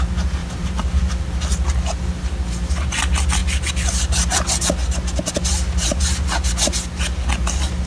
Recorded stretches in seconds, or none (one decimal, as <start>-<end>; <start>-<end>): 0.0-0.4; 1.2-7.9